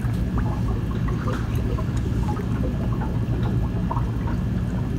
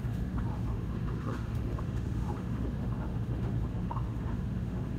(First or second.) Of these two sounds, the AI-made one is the second